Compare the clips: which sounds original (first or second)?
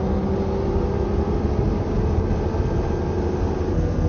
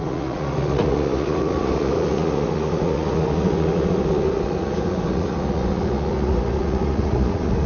first